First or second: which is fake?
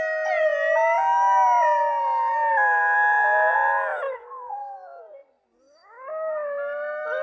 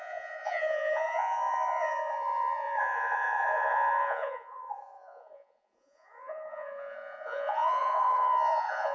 second